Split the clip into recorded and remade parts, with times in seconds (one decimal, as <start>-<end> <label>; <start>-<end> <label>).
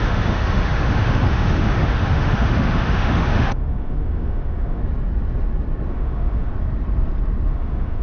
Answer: 0.0-4.8 remade; 4.8-5.9 recorded; 5.9-6.5 remade; 6.5-7.5 recorded; 7.5-8.0 remade